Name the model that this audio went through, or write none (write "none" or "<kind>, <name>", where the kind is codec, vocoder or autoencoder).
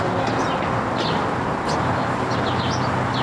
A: none